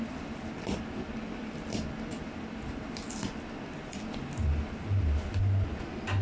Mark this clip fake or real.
real